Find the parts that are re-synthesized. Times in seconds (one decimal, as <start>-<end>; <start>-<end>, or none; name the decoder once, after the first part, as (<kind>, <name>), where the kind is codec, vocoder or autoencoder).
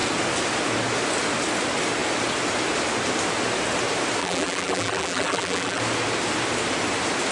4.2-5.8 (vocoder, BigVGAN v2)